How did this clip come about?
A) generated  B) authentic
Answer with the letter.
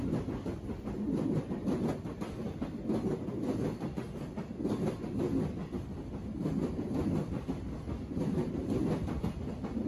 B